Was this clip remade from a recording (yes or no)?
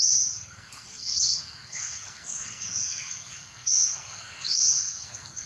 yes